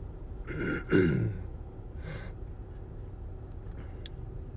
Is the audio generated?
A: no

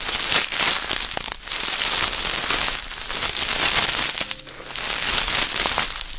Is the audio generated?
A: no